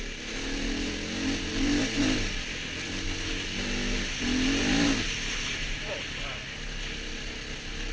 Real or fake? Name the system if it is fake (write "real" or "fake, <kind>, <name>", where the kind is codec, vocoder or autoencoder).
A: real